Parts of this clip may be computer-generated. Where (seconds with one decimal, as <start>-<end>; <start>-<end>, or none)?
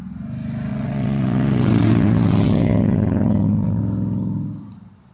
0.7-3.8